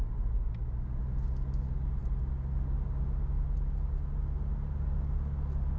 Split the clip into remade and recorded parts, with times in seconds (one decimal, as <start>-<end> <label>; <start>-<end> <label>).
0.0-5.8 recorded